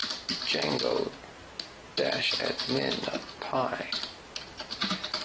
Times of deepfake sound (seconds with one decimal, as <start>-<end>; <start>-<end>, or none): none